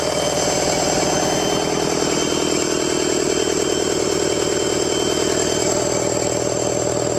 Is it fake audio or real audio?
real